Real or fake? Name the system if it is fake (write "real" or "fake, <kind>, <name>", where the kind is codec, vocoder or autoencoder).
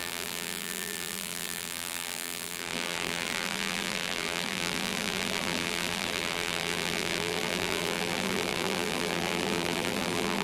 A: fake, vocoder, BigVGAN v2